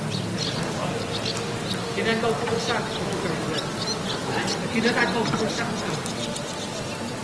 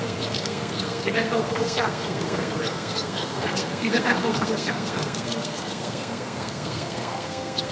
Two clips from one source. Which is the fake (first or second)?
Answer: second